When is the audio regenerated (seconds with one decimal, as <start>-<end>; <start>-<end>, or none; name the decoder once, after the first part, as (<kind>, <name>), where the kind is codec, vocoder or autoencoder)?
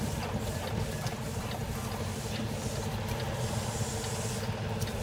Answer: none